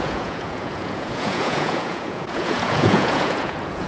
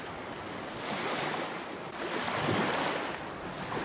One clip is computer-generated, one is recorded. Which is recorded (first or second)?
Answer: second